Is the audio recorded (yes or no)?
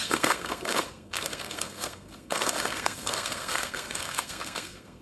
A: no